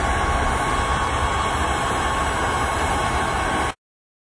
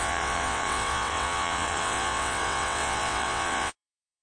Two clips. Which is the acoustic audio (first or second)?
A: first